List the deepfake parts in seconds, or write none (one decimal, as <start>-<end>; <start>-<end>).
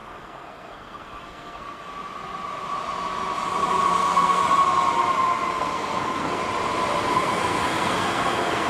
0.0-1.9; 3.9-4.4; 5.5-6.4; 7.1-8.7